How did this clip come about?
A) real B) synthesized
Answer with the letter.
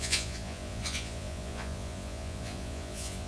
B